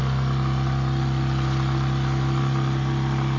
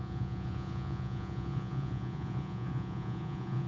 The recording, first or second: first